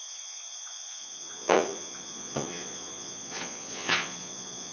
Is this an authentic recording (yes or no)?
no